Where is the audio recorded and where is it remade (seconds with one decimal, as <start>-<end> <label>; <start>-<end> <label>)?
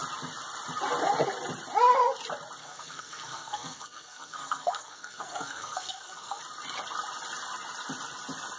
0.0-2.6 recorded; 2.6-6.4 remade; 6.4-8.6 recorded